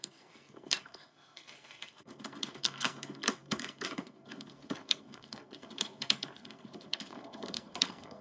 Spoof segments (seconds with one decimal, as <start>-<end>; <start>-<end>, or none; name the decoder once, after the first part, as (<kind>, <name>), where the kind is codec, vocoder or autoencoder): 0.0-8.2 (codec, SNAC)